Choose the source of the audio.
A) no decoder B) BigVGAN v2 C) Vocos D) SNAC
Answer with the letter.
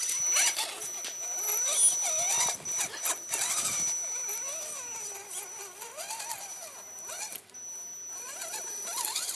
A